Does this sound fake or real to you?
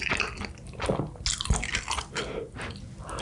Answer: real